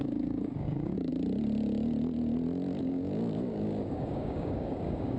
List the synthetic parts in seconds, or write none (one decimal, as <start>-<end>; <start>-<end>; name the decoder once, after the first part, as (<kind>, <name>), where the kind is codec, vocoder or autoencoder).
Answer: 0.0-1.1 (codec, DAC); 2.8-5.2